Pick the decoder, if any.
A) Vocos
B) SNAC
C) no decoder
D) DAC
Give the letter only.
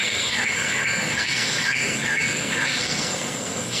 B